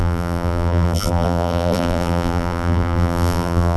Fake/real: fake